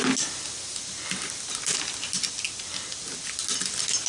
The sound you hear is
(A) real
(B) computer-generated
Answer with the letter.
A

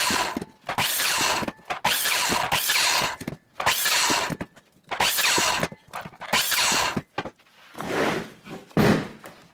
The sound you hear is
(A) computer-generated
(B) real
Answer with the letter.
B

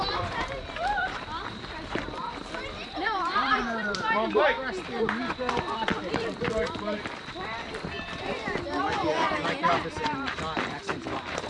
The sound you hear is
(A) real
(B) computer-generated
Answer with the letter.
B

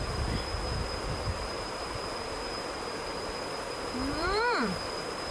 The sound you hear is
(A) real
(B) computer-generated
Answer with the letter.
B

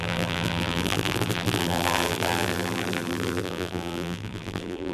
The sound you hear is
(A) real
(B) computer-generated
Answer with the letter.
B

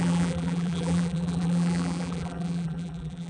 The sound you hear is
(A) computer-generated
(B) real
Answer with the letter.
A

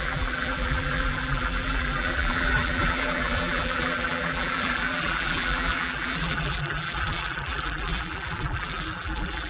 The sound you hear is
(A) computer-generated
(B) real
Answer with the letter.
A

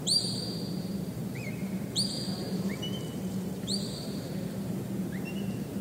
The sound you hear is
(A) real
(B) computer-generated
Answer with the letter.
B